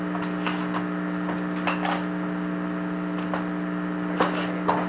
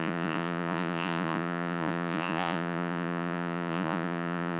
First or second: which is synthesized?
second